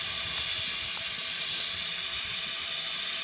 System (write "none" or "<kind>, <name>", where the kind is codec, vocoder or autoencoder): none